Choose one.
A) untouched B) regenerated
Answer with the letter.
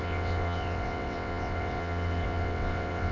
B